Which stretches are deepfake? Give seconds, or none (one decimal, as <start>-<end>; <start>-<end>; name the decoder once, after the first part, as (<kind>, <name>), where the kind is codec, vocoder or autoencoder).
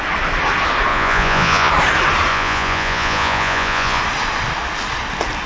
0.9-1.7 (vocoder, Vocos); 2.3-4.0